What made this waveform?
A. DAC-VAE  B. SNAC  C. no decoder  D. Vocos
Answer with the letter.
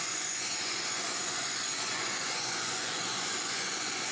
D